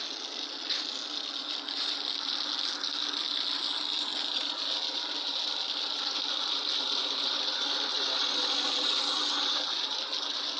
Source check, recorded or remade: recorded